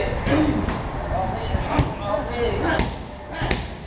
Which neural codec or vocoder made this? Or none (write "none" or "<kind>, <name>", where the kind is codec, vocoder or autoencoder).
none